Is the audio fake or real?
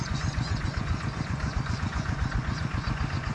fake